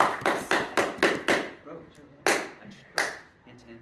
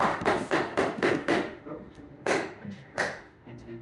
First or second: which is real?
first